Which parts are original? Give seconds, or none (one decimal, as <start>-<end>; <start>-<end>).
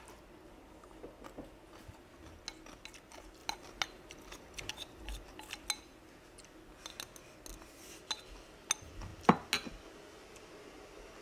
0.0-11.2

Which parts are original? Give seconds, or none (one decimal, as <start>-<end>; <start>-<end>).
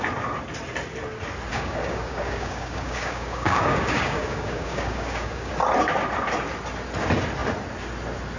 0.0-1.5; 5.5-8.4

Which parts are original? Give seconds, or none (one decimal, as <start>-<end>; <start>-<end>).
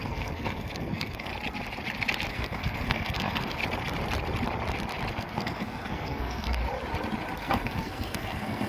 1.3-2.3; 3.6-5.1; 6.6-7.4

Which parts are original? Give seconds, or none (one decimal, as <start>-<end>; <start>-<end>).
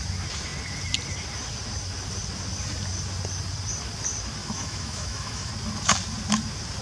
0.0-4.4; 5.5-6.8